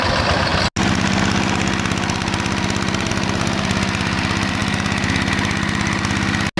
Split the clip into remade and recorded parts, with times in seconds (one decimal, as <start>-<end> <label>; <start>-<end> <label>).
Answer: 0.0-6.6 recorded